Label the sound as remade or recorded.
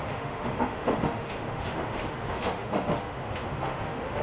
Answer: remade